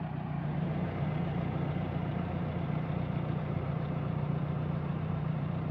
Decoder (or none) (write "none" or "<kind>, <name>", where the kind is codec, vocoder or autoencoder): vocoder, BigVGAN v2